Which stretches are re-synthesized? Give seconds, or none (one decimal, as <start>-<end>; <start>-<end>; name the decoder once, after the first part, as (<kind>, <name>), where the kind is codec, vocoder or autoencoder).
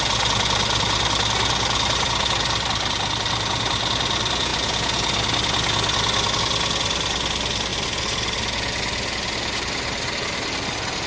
none